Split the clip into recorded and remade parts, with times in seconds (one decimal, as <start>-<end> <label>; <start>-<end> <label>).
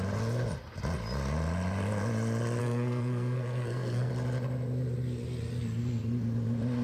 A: 0.0-2.6 recorded; 2.6-4.1 remade; 4.1-6.8 recorded